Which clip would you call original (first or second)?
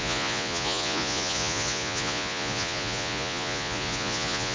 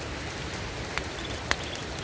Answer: second